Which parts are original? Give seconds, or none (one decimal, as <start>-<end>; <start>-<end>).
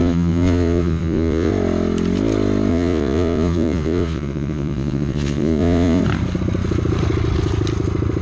1.5-2.7; 6.0-8.2